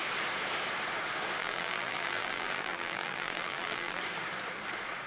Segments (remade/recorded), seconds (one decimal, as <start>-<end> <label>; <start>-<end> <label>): 0.0-1.4 recorded; 1.4-4.0 remade; 4.0-5.1 recorded